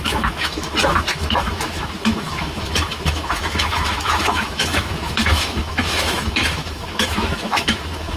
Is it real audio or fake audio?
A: fake